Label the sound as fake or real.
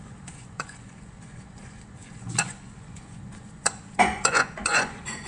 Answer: fake